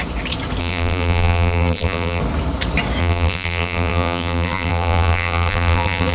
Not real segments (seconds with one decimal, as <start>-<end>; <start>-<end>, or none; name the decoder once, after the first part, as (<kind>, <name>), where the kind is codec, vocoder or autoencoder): 0.6-2.2 (vocoder, BigVGAN v2); 3.0-6.1